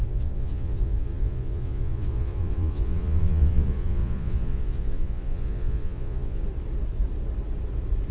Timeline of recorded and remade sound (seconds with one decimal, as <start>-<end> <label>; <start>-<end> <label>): 0.0-6.4 remade; 6.4-8.1 recorded